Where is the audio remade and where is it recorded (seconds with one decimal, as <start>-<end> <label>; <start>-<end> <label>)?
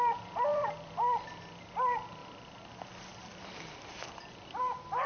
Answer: 0.0-0.5 recorded; 0.5-1.4 remade; 1.4-2.2 recorded; 2.2-4.6 remade; 4.6-5.1 recorded